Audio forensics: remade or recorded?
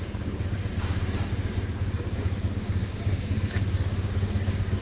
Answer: remade